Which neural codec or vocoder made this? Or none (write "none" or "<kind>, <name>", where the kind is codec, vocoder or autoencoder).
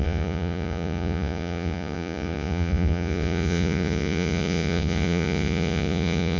vocoder, Vocos